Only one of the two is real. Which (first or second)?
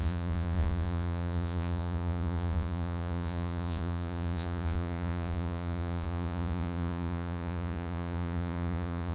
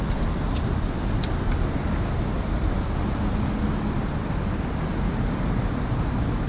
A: second